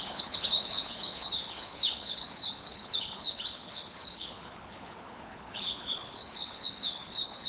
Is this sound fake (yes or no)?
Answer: yes